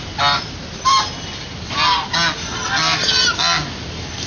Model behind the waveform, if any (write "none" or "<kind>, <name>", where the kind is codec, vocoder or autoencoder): none